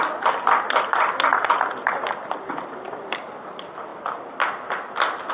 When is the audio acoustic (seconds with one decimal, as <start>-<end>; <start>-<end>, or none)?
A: 0.0-1.3; 3.0-5.3